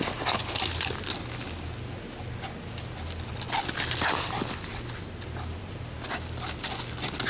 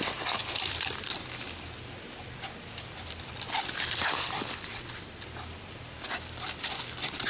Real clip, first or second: first